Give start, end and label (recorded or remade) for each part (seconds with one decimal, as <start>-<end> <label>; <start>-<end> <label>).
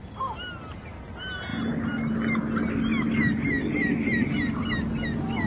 0.0-5.5 recorded